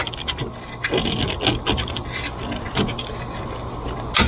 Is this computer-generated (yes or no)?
no